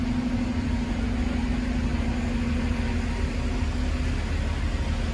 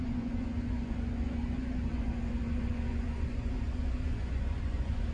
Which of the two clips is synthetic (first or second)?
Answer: second